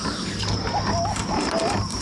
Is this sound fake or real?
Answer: real